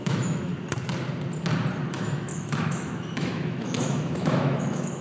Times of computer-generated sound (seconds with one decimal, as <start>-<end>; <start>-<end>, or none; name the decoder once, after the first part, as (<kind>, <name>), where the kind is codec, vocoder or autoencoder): 0.0-0.5 (autoencoder, DAC-VAE); 1.9-5.0